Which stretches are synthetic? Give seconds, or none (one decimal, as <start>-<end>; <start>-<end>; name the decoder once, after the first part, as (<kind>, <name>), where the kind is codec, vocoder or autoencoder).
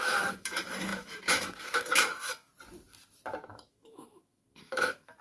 0.0-2.5 (autoencoder, DAC-VAE); 3.5-5.2